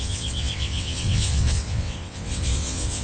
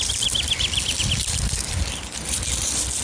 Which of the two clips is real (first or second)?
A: second